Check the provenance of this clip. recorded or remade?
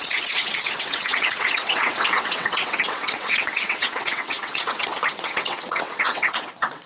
remade